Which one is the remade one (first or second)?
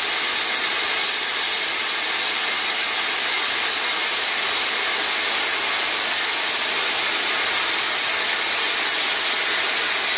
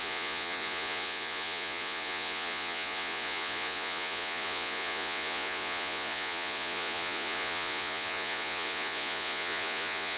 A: second